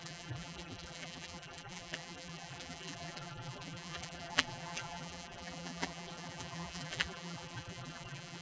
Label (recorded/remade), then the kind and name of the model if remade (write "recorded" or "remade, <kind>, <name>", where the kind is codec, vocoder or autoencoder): remade, vocoder, BigVGAN v2